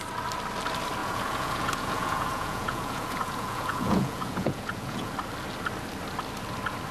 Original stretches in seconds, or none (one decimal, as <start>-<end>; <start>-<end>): 0.0-1.0; 5.1-6.9